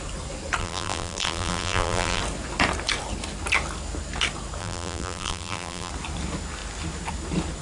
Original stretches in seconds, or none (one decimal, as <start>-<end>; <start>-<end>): 0.0-0.6; 2.2-4.6; 5.9-7.6